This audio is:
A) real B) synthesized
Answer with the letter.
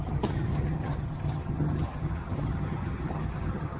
B